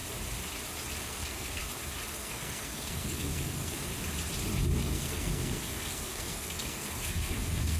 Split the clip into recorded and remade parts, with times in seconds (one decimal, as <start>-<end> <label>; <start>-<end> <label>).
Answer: 0.0-1.0 recorded; 1.0-1.6 remade; 1.6-2.2 recorded; 2.2-3.9 remade; 3.9-4.8 recorded; 4.8-7.8 remade